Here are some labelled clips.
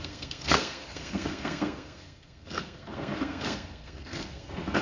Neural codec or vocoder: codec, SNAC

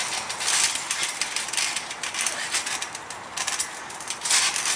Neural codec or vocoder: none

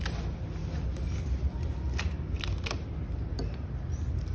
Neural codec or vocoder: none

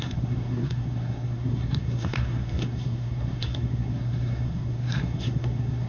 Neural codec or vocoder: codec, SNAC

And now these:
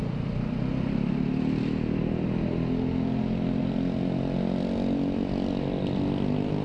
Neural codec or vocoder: none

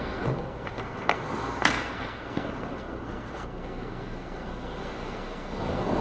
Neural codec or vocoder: codec, SNAC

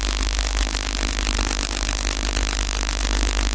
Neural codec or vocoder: codec, SNAC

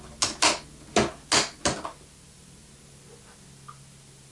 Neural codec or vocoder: none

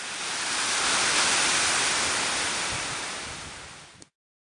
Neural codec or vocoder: none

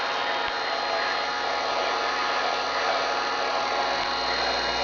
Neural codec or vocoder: none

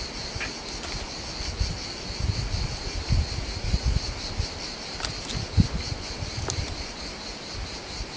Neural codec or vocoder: none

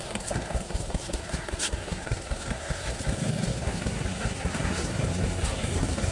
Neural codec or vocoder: codec, SNAC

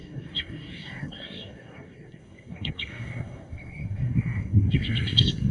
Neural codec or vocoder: codec, SNAC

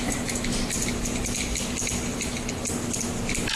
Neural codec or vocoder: none